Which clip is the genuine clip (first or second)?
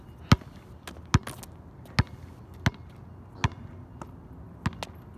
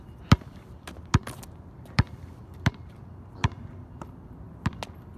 first